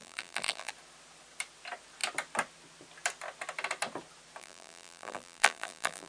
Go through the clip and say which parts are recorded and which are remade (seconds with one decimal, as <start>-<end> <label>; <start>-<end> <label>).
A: 0.0-0.7 remade; 0.7-4.4 recorded; 4.4-6.1 remade